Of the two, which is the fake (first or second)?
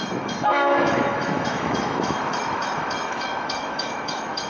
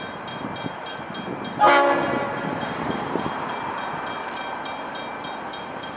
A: first